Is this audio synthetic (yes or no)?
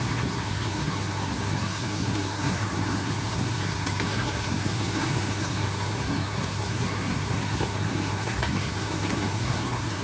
yes